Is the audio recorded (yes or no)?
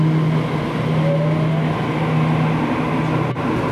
yes